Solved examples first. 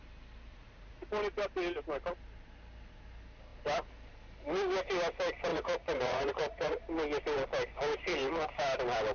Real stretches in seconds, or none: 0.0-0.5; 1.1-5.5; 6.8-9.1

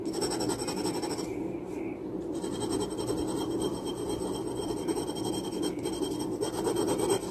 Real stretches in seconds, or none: 0.0-2.0; 5.2-7.3

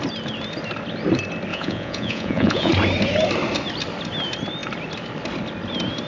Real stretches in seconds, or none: 0.0-1.5; 2.7-6.1

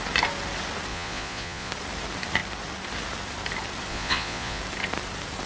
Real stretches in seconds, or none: 0.0-0.9; 1.7-3.9; 4.6-5.5

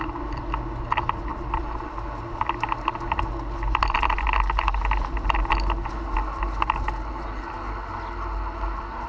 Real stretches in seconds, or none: 0.0-1.3; 1.9-9.1

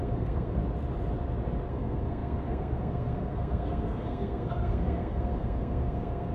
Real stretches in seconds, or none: 0.6-1.7